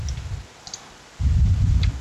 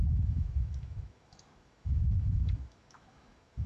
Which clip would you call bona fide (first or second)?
first